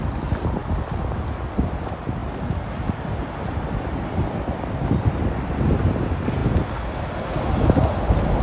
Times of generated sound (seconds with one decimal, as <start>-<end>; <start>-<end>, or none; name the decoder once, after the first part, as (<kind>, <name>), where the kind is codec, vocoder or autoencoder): none